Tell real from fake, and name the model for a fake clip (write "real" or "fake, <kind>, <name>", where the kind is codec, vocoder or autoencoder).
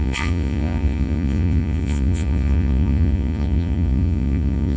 fake, vocoder, Vocos